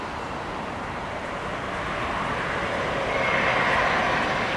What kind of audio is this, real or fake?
real